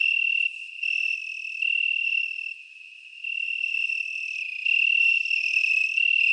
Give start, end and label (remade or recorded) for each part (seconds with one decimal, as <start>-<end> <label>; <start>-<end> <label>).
0.0-6.3 recorded